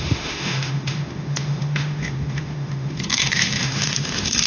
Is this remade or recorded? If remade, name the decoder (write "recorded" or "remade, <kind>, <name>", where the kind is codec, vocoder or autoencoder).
remade, autoencoder, DAC-VAE